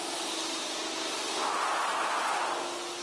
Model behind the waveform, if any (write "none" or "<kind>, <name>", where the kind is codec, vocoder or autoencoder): none